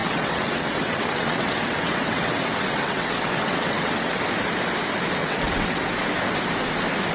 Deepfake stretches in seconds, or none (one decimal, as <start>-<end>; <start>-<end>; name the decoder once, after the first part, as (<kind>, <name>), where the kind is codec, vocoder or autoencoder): 0.0-4.2 (vocoder, WaveNeXt); 5.2-5.8